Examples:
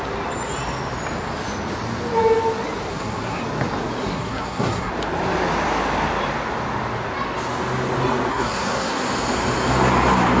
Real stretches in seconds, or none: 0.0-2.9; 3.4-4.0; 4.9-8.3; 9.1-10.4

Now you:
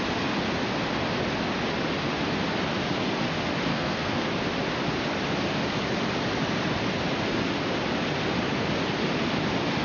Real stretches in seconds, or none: 0.0-3.7; 4.3-9.8

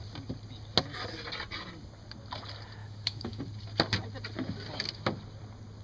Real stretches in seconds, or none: 0.0-2.8; 3.4-5.8

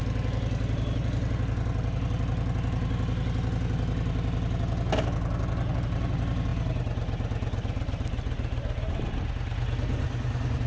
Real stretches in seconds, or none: 0.0-10.7

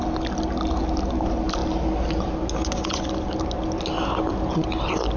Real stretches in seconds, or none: 0.0-5.2

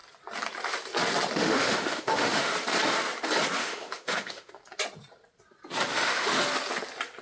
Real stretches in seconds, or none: 0.0-1.4; 2.5-3.6; 4.5-5.9; 6.4-7.2